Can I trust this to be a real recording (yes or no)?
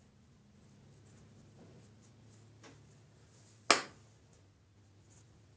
yes